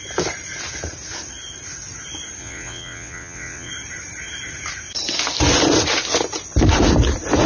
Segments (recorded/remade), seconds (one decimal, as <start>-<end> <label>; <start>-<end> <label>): 0.0-2.4 recorded; 2.4-3.7 remade; 3.7-7.5 recorded